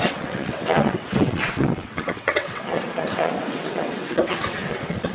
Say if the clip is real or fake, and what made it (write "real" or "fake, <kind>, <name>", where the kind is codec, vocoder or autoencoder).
fake, vocoder, WaveNeXt